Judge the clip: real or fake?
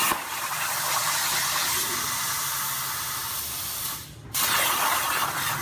real